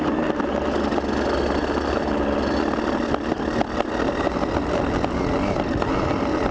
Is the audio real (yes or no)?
yes